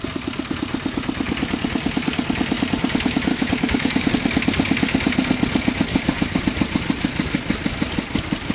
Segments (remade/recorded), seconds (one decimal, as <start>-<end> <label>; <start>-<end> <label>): 0.0-3.3 recorded; 3.3-4.1 remade; 4.1-5.9 recorded; 5.9-6.4 remade; 6.4-8.5 recorded